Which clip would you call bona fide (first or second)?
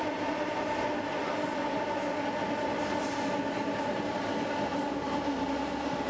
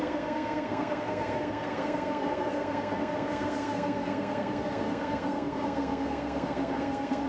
first